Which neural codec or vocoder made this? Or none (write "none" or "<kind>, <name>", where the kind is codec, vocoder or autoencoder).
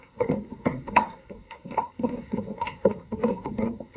codec, SNAC